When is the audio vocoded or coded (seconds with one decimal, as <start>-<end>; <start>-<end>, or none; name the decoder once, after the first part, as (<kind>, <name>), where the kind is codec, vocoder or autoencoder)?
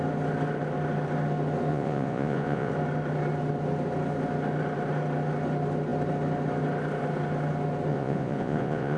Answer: 1.7-2.7 (vocoder, Vocos); 7.9-9.0